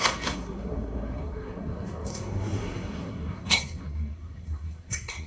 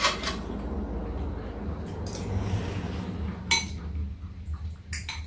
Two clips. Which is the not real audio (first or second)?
first